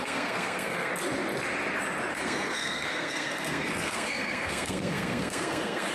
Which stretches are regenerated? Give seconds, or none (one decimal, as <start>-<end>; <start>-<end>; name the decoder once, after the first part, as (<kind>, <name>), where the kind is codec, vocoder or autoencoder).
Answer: 0.0-0.9 (codec, SNAC); 2.1-5.9